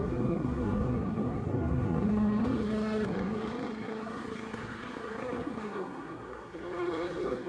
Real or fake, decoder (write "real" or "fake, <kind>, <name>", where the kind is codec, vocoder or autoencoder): fake, codec, SNAC